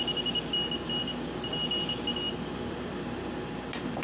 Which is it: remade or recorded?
recorded